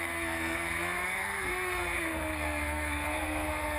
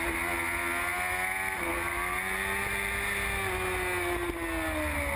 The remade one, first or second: first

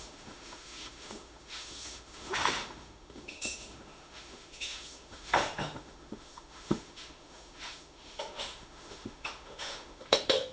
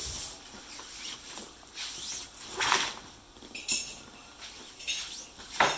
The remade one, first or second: first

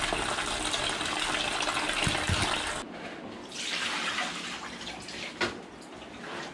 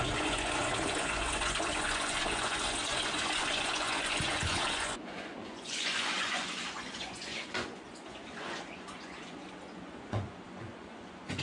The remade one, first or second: second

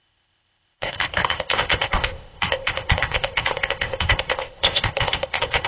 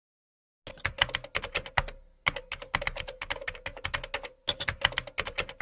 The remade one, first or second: first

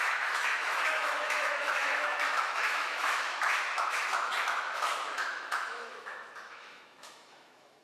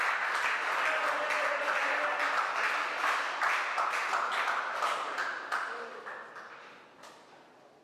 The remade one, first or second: first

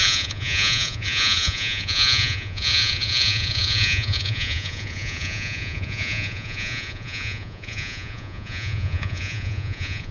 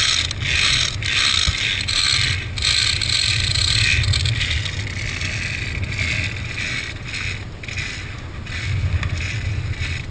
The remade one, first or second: first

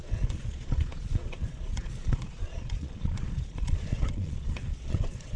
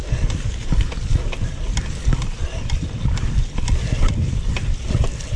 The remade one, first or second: first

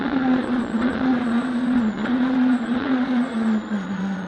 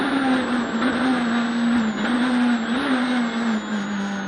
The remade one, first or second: first